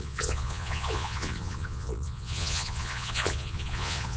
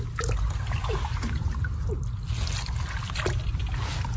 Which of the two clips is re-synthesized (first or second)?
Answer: first